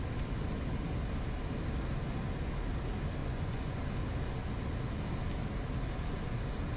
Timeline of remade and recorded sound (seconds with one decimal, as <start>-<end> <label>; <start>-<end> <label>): 0.0-3.2 recorded; 3.2-3.8 remade; 3.8-6.8 recorded